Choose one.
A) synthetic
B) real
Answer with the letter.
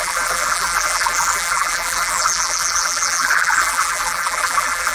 A